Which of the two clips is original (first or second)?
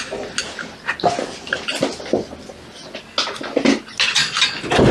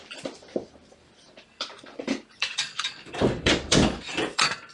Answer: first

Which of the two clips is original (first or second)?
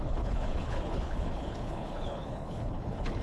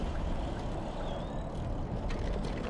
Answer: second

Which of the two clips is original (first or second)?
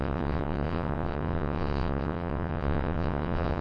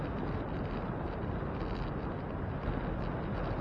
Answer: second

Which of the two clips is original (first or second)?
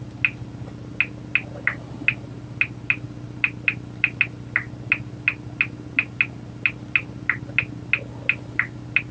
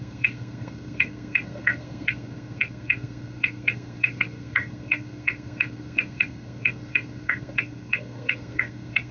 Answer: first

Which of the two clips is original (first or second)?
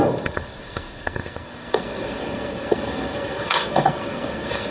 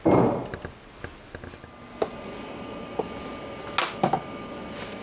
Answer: second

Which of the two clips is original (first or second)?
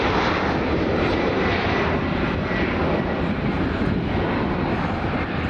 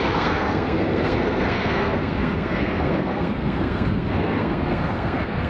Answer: first